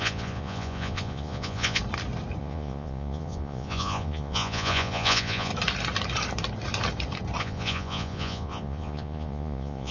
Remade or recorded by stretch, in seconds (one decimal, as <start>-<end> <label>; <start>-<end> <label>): 0.0-1.8 remade; 1.8-2.4 recorded; 2.4-5.5 remade; 5.5-7.4 recorded; 7.4-9.9 remade